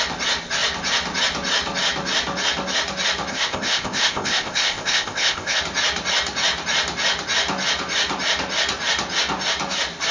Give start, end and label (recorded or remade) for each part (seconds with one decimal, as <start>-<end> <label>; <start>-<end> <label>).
0.0-3.3 recorded; 3.3-5.6 remade; 5.6-10.1 recorded